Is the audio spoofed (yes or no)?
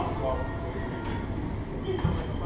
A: no